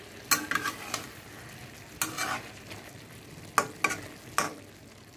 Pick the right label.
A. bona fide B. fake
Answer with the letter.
A